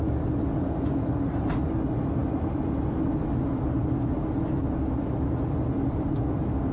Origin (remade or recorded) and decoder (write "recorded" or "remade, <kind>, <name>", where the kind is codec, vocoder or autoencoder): recorded